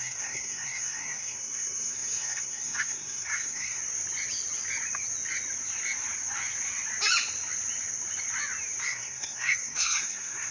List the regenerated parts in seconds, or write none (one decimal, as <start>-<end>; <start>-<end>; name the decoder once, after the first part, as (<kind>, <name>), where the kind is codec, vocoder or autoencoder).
0.0-3.8 (codec, SNAC); 8.8-10.5